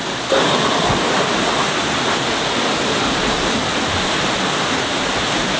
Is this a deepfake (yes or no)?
no